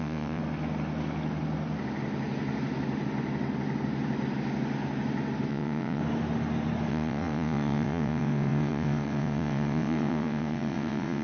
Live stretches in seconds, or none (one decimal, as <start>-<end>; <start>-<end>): 0.4-5.5; 6.0-6.9